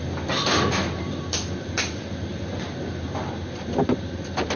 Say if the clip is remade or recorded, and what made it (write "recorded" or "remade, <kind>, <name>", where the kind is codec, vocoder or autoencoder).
recorded